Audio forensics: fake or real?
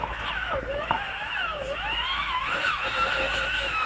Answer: fake